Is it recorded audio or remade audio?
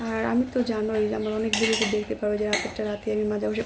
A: recorded